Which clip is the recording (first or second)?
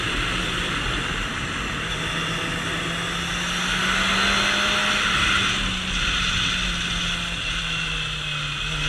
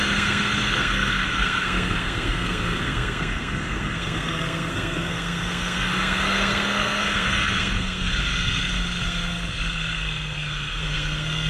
first